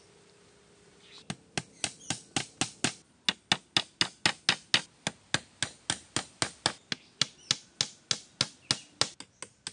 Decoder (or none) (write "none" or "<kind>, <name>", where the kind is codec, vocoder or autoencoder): none